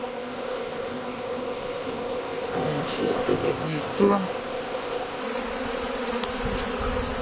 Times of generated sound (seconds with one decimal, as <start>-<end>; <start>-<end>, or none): 0.0-5.2